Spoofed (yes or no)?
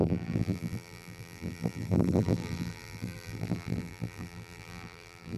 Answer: yes